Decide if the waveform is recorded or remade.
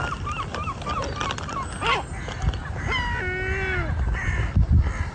recorded